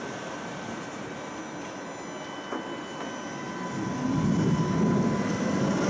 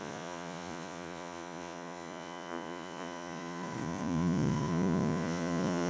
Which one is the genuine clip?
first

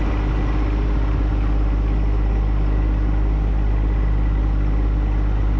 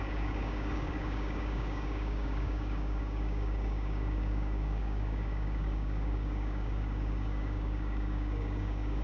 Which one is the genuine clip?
first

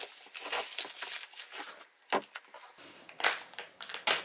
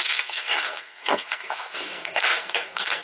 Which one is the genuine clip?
first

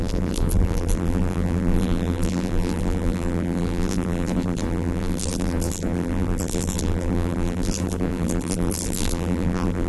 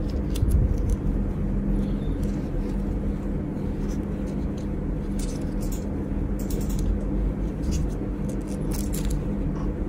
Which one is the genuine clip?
second